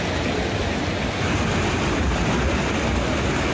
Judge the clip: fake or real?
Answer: real